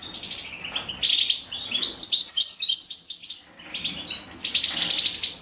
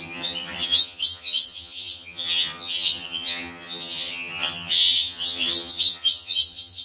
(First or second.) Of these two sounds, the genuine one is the first